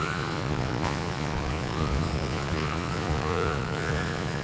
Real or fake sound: fake